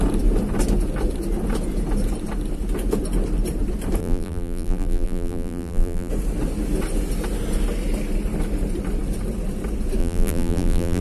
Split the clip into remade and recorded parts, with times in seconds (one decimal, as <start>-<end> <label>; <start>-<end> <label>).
0.0-4.0 recorded; 4.0-6.1 remade; 6.1-10.0 recorded; 10.0-11.0 remade